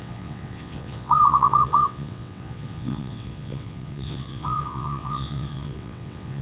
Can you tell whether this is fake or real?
fake